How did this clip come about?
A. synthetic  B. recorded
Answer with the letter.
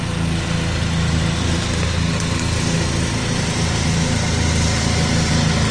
B